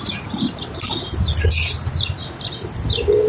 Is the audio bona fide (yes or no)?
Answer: yes